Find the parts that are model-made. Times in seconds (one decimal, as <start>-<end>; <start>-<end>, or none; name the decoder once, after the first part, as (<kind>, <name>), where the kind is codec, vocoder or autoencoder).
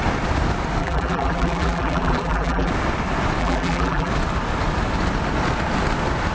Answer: 0.8-2.7 (vocoder, BigVGAN v2); 3.4-4.1